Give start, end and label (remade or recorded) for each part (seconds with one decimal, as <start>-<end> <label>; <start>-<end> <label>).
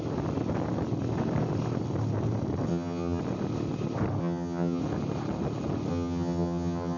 0.0-2.7 recorded; 2.7-3.2 remade; 3.2-4.2 recorded; 4.2-4.8 remade; 4.8-5.9 recorded; 5.9-7.0 remade